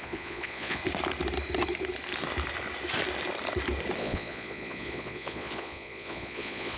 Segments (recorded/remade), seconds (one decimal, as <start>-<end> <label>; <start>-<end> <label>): 0.0-0.8 remade; 0.8-4.0 recorded; 4.0-6.8 remade